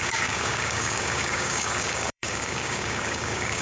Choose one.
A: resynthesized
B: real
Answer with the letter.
A